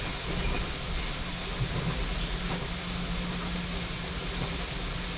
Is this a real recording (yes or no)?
yes